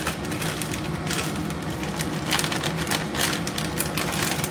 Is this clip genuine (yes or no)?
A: yes